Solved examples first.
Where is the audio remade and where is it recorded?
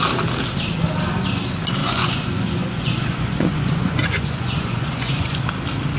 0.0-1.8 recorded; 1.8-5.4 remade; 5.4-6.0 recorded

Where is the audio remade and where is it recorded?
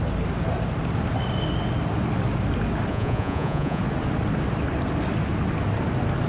0.0-2.9 recorded; 2.9-3.8 remade; 3.8-6.3 recorded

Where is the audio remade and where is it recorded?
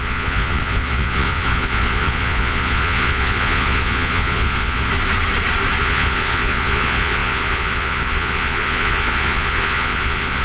0.0-4.9 remade; 4.9-5.8 recorded; 5.8-10.4 remade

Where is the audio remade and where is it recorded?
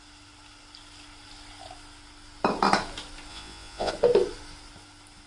0.0-3.3 recorded; 3.3-3.9 remade; 3.9-5.3 recorded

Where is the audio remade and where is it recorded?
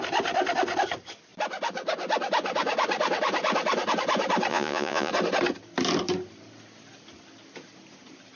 0.0-4.5 recorded; 4.5-5.1 remade; 5.1-8.4 recorded